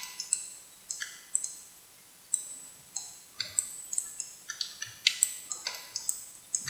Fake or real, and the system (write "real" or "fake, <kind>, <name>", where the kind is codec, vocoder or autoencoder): real